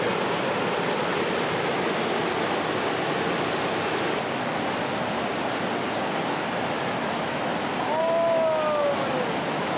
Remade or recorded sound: recorded